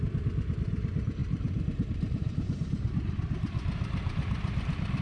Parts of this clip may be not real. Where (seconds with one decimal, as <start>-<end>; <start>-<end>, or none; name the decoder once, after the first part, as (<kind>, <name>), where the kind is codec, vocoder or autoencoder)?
1.2-3.1 (vocoder, BigVGAN v2)

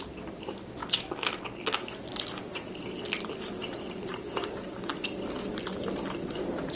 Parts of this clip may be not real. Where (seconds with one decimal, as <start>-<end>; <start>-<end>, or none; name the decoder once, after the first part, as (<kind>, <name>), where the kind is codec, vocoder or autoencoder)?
0.0-0.8 (vocoder, BigVGAN v2); 3.9-4.9; 5.5-6.8

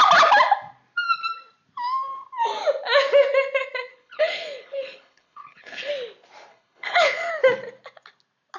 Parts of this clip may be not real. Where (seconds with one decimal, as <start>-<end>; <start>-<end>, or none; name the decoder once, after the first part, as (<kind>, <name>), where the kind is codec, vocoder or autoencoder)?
3.9-5.9 (codec, HILCodec); 6.5-7.3